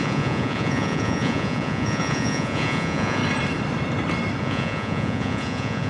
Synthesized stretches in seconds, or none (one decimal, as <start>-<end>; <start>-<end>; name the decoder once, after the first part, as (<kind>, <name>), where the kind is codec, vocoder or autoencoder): 0.0-3.2 (vocoder, Vocos); 4.4-5.9

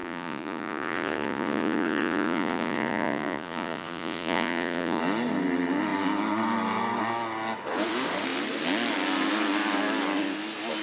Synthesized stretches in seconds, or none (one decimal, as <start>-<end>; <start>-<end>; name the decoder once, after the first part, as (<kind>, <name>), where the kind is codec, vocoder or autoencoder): 0.0-5.0 (vocoder, Vocos)